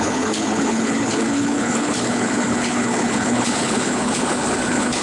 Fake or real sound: fake